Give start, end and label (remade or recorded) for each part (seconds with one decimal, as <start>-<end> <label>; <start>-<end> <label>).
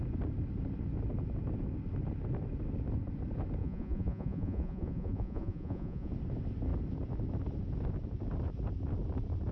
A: 0.0-3.6 recorded; 3.6-6.1 remade; 6.1-9.5 recorded